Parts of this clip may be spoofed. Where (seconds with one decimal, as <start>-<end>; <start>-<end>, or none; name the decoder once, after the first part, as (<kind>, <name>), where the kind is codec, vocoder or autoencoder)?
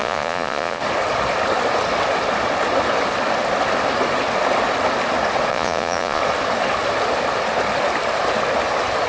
0.0-0.8 (vocoder, Vocos); 5.5-6.2